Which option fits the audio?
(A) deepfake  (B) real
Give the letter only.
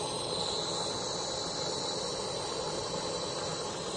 B